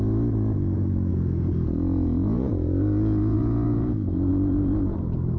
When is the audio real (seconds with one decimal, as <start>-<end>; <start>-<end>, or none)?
0.0-1.1; 4.3-5.4